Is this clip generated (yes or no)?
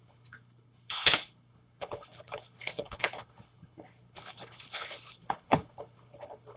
yes